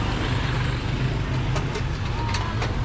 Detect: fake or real real